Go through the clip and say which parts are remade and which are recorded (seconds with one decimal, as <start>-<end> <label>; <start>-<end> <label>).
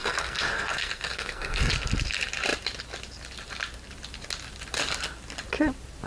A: 0.0-1.7 remade; 1.7-6.1 recorded